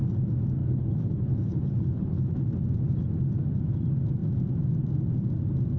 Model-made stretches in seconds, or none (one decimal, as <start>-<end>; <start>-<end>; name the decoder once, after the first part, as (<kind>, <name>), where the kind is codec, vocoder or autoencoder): 0.6-2.3 (codec, HILCodec)